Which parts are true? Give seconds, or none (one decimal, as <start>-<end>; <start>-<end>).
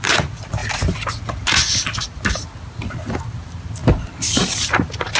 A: 0.6-3.3